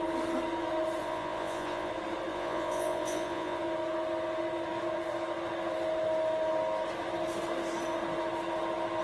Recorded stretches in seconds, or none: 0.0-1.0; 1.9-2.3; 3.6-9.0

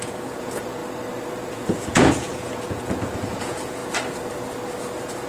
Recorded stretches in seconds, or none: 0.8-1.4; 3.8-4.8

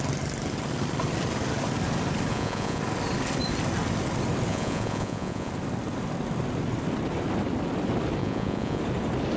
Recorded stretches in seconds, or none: 0.0-2.3; 2.8-4.5; 5.5-8.2; 8.8-9.4